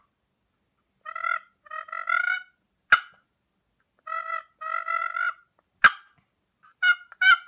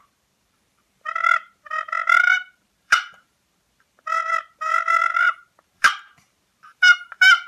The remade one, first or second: second